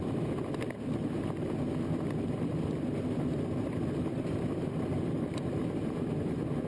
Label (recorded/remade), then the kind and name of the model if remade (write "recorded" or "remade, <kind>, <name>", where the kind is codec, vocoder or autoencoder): recorded